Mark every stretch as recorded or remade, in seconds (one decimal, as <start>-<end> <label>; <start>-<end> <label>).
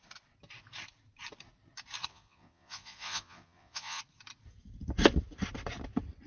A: 0.0-2.1 recorded; 2.1-4.0 remade; 4.0-6.3 recorded